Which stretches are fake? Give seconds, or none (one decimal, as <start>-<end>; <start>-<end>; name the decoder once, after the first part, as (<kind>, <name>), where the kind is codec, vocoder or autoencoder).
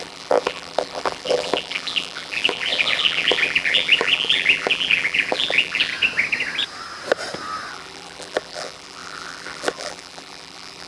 0.0-5.9 (vocoder, BigVGAN v2); 7.7-10.9